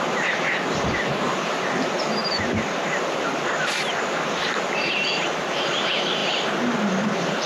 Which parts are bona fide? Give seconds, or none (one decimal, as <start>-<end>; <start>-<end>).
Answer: 2.2-4.0; 6.2-7.1